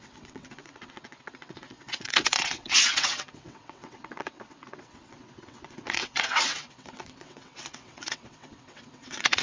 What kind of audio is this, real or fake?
fake